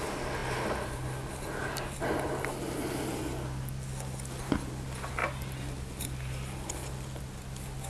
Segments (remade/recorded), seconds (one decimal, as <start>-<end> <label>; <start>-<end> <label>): 0.0-7.9 recorded